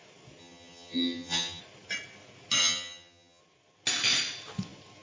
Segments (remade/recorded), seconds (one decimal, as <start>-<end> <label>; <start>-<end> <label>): 0.0-0.4 recorded; 0.4-1.6 remade; 1.6-2.6 recorded; 2.6-3.4 remade; 3.4-5.0 recorded